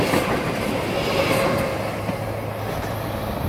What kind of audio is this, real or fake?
real